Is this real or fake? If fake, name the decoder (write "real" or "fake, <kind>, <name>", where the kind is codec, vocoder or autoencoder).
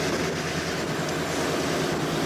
real